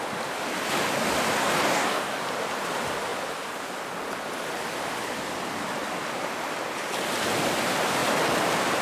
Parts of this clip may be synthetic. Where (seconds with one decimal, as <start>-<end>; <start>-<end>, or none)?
1.4-2.2